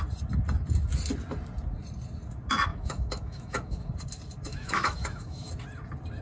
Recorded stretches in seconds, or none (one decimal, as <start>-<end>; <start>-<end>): 0.0-2.7; 3.9-4.5; 5.5-6.2